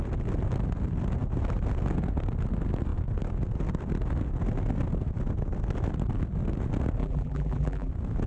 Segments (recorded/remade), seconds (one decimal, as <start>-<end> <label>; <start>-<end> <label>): 0.0-7.0 recorded; 7.0-7.9 remade; 7.9-8.3 recorded